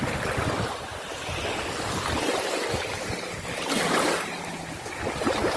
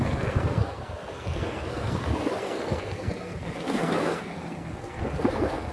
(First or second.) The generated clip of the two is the second